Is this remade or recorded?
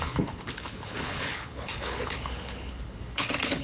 remade